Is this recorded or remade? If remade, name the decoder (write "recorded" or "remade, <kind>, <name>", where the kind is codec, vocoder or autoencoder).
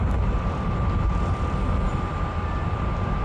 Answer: recorded